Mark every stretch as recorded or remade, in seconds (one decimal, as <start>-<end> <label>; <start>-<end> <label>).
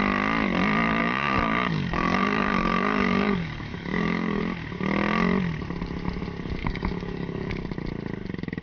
0.0-1.0 recorded; 1.0-4.4 remade; 4.4-6.6 recorded; 6.6-7.5 remade; 7.5-8.6 recorded